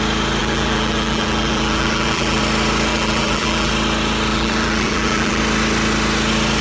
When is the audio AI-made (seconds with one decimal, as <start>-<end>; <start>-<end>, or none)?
0.4-2.4; 2.9-3.7; 4.3-5.4